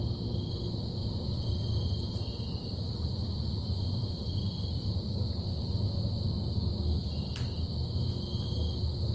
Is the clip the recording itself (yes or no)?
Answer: yes